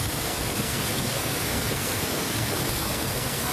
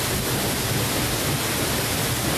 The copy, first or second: first